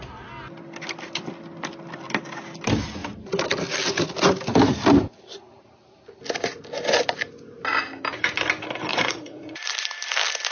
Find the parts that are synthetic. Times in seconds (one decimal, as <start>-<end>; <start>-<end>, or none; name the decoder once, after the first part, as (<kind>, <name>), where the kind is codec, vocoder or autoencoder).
8.9-9.8 (vocoder, Vocos)